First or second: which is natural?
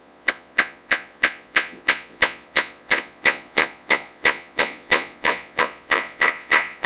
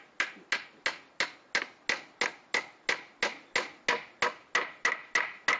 second